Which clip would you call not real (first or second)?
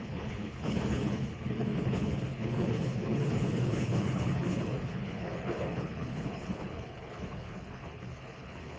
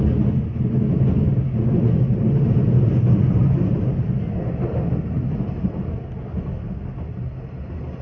first